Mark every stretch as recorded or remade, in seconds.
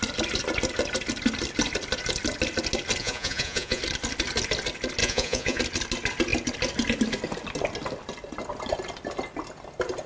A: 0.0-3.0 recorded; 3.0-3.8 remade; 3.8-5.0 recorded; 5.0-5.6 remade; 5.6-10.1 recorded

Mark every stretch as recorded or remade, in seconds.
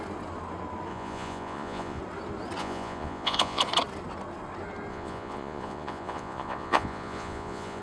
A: 0.0-0.9 recorded; 0.9-2.0 remade; 2.0-2.6 recorded; 2.6-3.6 remade; 3.6-4.9 recorded; 4.9-7.8 remade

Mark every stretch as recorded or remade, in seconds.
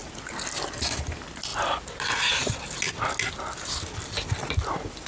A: 0.0-0.6 recorded; 0.6-1.5 remade; 1.5-4.3 recorded; 4.3-5.1 remade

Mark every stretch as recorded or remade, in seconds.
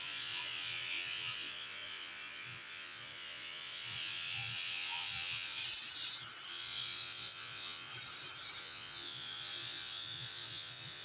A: 0.0-5.6 remade; 5.6-6.5 recorded; 6.5-7.9 remade; 7.9-8.6 recorded; 8.6-11.0 remade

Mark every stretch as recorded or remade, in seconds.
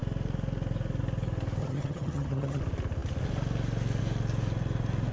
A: 0.0-1.6 recorded; 1.6-2.6 remade; 2.6-5.1 recorded